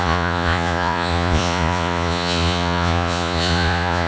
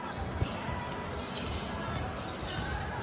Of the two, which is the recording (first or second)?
second